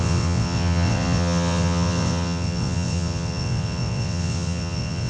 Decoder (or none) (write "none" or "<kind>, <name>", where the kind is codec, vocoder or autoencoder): vocoder, WaveNeXt